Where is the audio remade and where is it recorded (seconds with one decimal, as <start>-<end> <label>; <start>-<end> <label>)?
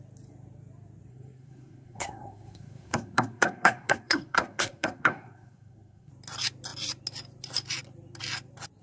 0.0-1.1 recorded; 1.1-6.1 remade; 6.1-8.8 recorded